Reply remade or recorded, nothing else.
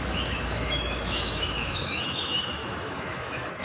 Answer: remade